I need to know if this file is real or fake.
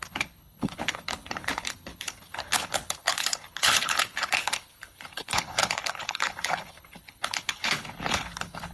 fake